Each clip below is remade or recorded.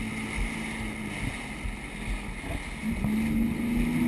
recorded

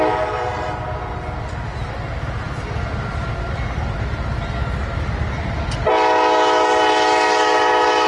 recorded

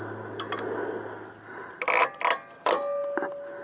recorded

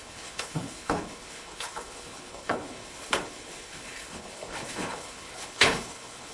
remade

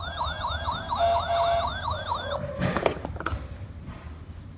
recorded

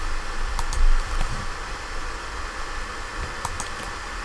recorded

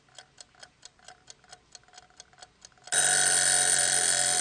recorded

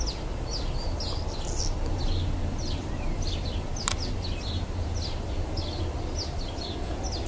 recorded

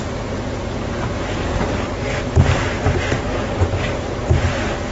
recorded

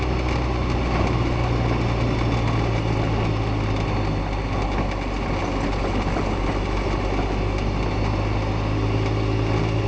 recorded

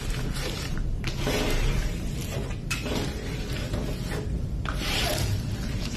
remade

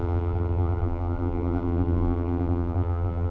remade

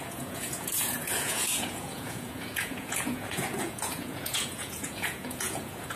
remade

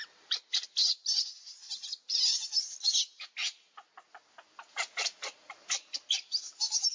recorded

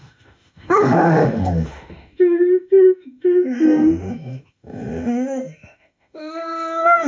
remade